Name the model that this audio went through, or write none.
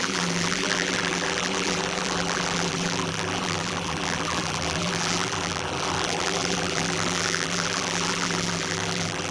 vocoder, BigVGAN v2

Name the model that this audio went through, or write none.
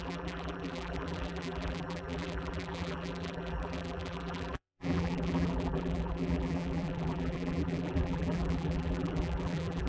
vocoder, BigVGAN v2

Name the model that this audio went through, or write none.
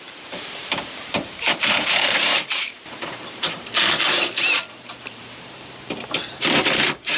vocoder, BigVGAN v2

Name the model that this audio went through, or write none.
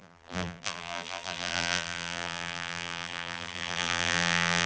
vocoder, BigVGAN v2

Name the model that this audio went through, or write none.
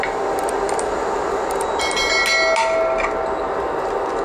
none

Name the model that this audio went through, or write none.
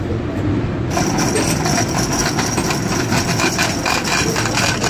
none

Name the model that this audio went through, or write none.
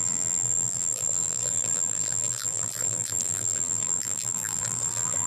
vocoder, BigVGAN v2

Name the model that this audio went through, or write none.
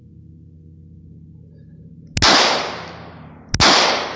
none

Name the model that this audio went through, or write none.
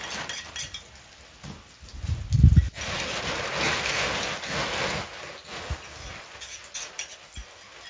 none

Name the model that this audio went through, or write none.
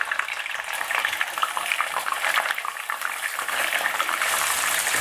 vocoder, BigVGAN v2